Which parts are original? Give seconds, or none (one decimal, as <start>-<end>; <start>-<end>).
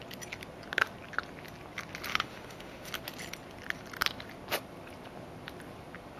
0.0-2.1; 2.9-6.2